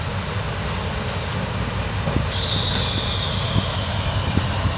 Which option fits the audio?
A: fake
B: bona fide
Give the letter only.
B